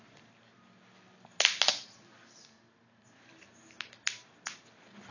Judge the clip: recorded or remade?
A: recorded